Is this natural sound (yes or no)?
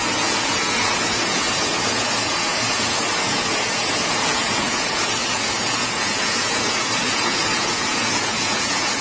no